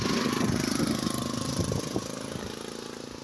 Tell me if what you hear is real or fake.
real